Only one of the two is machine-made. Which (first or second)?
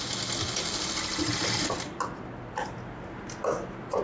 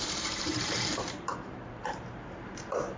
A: second